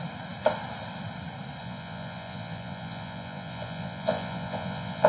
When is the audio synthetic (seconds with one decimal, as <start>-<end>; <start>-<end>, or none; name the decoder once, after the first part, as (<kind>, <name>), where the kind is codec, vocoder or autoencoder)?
1.6-5.1 (vocoder, Vocos)